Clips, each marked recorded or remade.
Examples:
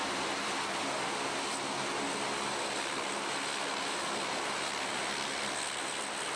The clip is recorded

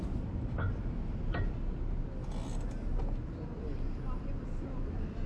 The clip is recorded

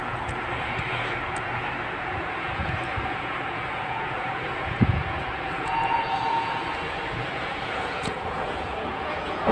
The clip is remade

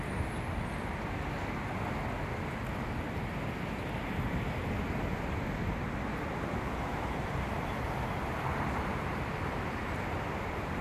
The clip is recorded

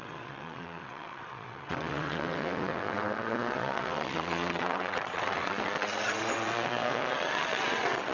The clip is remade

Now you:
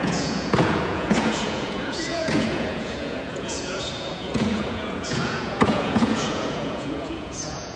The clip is remade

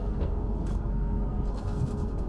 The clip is remade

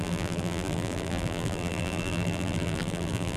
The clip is remade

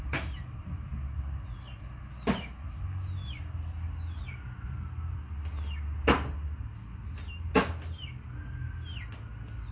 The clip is recorded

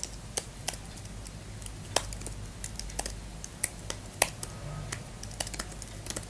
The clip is recorded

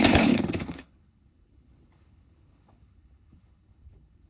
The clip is remade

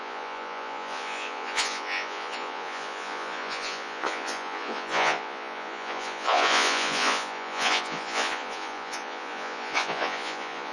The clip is remade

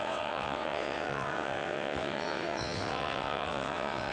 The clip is remade